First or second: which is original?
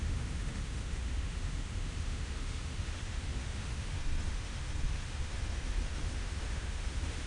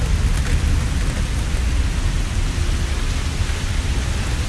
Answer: second